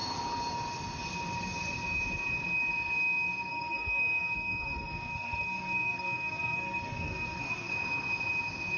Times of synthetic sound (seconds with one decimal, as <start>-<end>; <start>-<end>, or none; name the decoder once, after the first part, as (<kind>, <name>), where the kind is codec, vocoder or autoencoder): 3.5-7.7 (codec, SNAC)